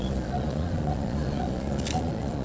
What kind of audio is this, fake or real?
fake